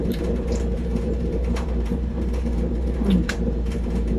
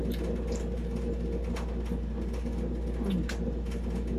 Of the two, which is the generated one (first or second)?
first